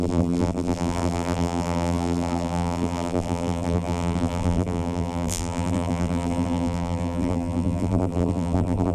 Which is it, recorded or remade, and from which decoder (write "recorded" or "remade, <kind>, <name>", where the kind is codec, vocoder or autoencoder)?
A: remade, vocoder, BigVGAN v2